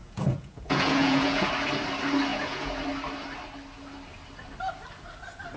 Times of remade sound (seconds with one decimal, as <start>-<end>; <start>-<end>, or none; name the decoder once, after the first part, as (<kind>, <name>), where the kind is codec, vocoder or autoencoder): 0.0-1.5 (vocoder, Vocos); 2.3-2.8

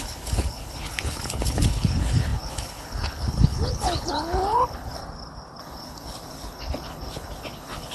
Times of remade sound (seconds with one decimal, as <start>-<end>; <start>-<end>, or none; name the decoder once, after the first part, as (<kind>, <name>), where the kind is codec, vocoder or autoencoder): 0.0-5.0 (codec, HILCodec); 5.6-7.9

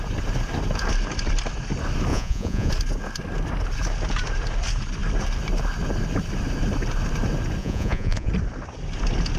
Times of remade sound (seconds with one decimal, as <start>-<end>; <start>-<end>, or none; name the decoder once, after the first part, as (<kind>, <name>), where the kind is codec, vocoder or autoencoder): 2.1-2.7 (vocoder, Vocos); 7.6-8.3

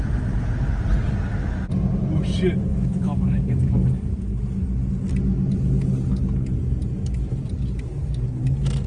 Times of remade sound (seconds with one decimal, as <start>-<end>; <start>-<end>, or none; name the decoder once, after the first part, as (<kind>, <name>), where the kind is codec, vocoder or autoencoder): 2.7-3.5 (autoencoder, DAC-VAE)

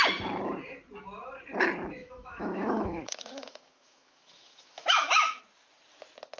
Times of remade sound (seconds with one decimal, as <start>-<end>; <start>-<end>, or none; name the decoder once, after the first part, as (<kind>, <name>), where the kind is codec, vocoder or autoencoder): 2.0-5.4 (autoencoder, DAC-VAE)

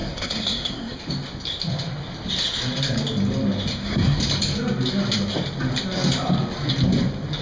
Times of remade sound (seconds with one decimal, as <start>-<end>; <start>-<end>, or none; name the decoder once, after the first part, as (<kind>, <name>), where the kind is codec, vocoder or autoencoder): 0.0-1.0 (codec, SNAC); 3.7-4.2

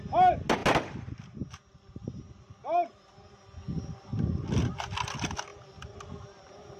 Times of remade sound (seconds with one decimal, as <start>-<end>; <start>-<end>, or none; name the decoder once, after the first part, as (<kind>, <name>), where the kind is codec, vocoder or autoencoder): none